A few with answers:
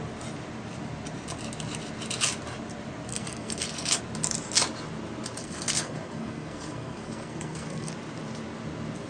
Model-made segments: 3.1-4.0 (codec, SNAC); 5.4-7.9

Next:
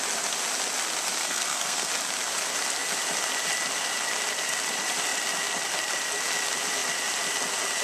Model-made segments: 1.2-1.9 (codec, SNAC)

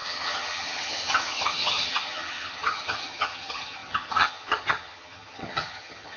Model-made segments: 0.0-6.2 (vocoder, HiFi-GAN)